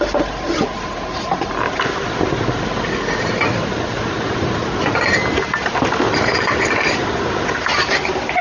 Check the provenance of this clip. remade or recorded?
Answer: recorded